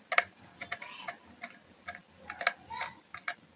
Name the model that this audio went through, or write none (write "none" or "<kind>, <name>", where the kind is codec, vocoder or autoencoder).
none